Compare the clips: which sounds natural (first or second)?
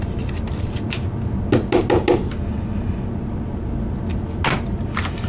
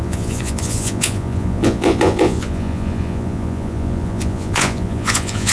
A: first